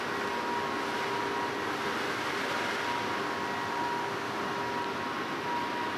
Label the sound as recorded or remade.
recorded